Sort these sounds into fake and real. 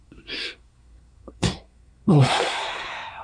fake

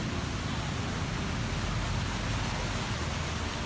real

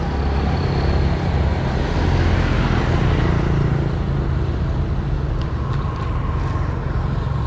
real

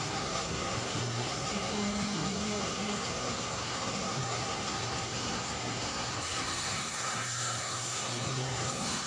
fake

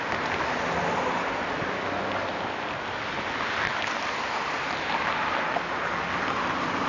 real